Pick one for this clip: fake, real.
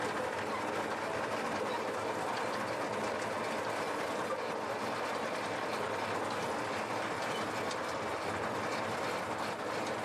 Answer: real